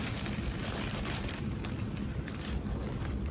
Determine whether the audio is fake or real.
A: fake